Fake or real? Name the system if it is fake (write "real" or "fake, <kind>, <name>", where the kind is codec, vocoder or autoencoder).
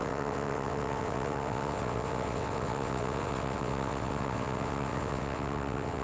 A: fake, vocoder, WaveNeXt